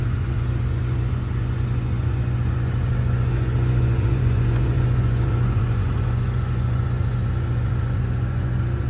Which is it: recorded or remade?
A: remade